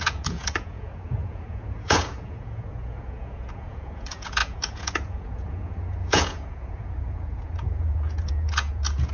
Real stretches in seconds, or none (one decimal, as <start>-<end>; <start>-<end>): none